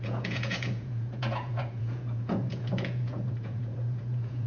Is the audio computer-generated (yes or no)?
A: yes